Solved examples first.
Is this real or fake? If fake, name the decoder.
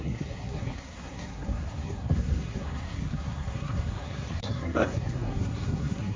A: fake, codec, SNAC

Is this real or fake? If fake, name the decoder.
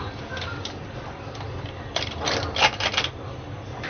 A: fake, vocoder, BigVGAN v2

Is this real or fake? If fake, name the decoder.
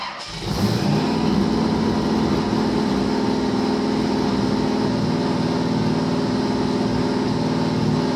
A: real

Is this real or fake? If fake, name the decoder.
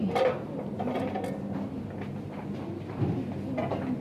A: real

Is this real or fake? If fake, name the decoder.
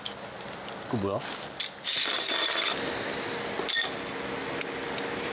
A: real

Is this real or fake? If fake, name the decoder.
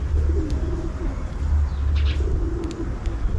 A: real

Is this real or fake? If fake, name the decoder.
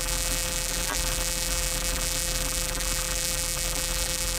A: fake, vocoder, BigVGAN v2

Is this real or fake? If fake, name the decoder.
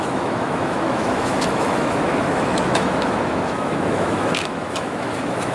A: fake, autoencoder, DAC-VAE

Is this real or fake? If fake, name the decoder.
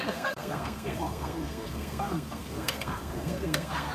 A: fake, codec, SNAC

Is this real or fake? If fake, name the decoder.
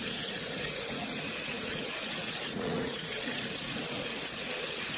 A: fake, vocoder, Vocos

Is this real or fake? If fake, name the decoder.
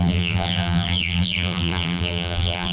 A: fake, vocoder, BigVGAN v2